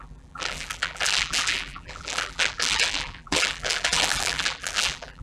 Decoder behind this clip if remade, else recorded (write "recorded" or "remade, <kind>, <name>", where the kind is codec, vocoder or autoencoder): remade, vocoder, BigVGAN v2